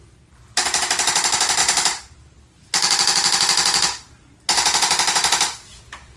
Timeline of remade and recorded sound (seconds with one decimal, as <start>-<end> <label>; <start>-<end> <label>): 0.0-1.6 recorded; 1.6-2.4 remade; 2.4-6.2 recorded